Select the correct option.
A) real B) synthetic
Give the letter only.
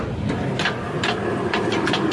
A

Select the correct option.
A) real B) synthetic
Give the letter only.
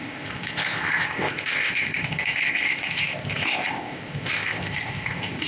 B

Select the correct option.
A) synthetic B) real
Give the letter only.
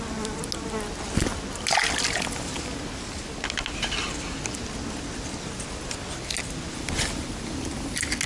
B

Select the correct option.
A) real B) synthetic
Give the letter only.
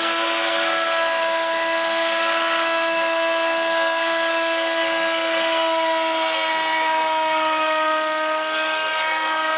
B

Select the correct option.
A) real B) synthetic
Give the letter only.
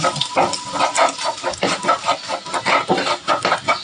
A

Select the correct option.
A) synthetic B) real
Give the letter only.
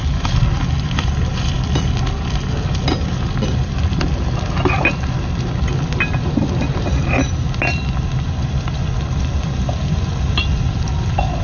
B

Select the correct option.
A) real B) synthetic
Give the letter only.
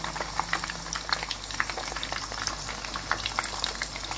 A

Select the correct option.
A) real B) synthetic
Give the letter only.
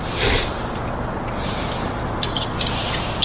A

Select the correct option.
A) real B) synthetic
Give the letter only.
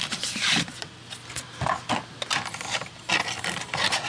A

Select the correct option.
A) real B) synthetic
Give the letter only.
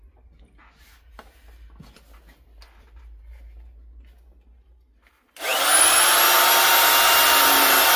A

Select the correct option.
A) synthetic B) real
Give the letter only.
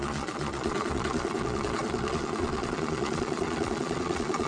A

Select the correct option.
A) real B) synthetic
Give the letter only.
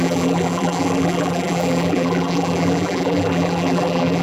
B